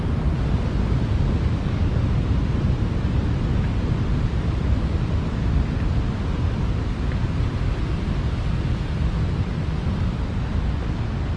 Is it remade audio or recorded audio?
recorded